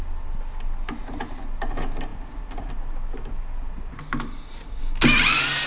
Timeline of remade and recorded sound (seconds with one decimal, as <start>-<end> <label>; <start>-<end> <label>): 0.0-5.7 recorded